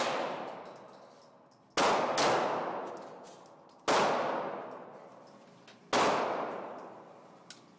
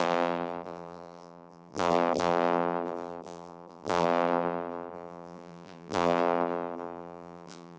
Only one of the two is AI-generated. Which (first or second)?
second